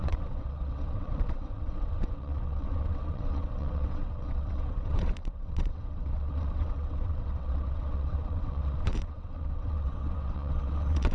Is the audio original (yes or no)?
no